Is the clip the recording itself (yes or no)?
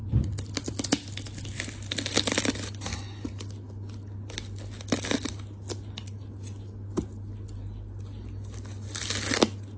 yes